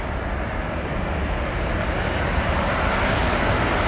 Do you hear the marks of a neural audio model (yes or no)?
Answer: no